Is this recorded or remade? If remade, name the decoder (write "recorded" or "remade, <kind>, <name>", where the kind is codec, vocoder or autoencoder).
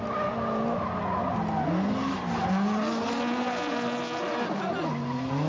recorded